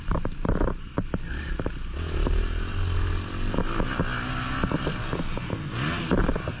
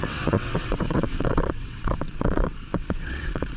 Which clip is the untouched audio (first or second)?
first